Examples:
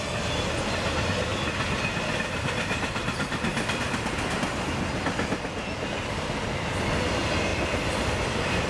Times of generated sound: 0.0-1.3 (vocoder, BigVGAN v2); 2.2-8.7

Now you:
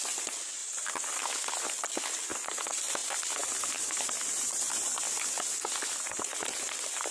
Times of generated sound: 0.6-1.8 (vocoder, BigVGAN v2); 3.0-7.1

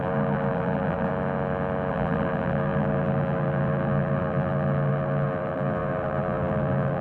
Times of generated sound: 0.0-1.1 (vocoder, BigVGAN v2); 1.9-7.0

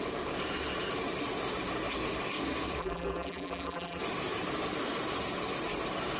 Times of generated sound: 2.8-4.0 (vocoder, BigVGAN v2)

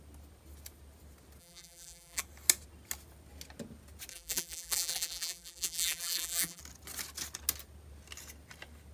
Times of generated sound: 1.4-2.2 (vocoder, BigVGAN v2); 4.1-6.6

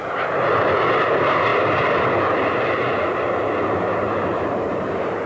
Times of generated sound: 4.0-5.3 (vocoder, BigVGAN v2)

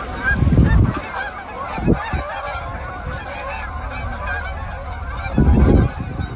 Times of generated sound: none

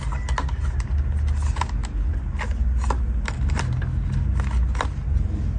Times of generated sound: none